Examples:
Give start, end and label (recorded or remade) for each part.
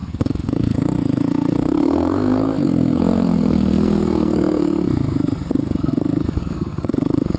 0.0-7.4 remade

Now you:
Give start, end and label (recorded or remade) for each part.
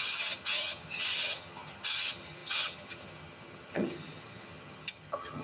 0.0-5.4 remade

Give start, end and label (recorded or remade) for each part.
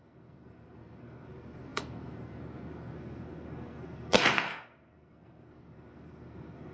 0.0-6.7 remade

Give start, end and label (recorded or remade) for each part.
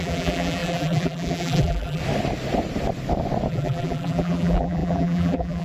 0.0-2.0 remade; 2.0-3.5 recorded; 3.5-5.6 remade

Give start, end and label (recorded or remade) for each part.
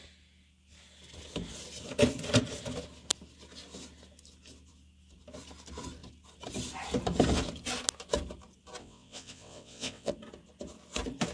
0.0-8.8 recorded; 8.8-10.1 remade; 10.1-11.3 recorded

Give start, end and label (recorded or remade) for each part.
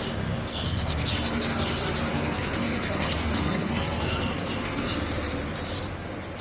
0.0-0.5 recorded; 0.5-1.1 remade; 1.1-2.1 recorded; 2.1-4.9 remade; 4.9-6.4 recorded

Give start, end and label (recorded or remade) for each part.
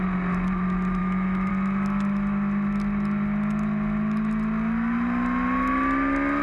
0.0-1.0 recorded; 1.0-1.5 remade; 1.5-6.4 recorded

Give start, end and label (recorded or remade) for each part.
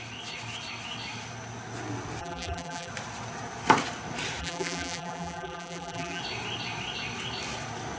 0.0-2.2 recorded; 2.2-2.9 remade; 2.9-4.4 recorded; 4.4-6.2 remade; 6.2-8.0 recorded